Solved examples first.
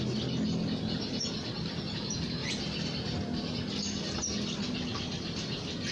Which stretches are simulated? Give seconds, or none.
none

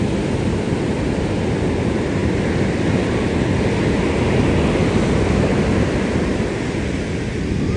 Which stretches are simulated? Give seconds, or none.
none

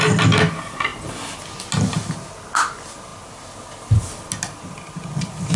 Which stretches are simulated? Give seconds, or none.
none